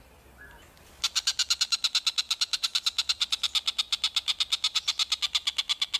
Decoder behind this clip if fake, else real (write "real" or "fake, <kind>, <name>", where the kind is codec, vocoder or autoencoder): fake, vocoder, BigVGAN v2